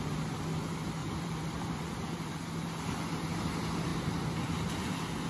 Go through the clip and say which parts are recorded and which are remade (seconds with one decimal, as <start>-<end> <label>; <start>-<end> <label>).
0.0-1.0 recorded; 1.0-3.4 remade; 3.4-5.3 recorded